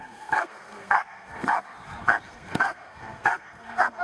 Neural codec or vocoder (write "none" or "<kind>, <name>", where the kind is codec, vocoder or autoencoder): codec, SNAC